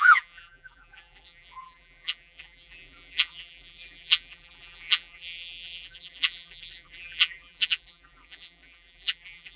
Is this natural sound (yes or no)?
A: no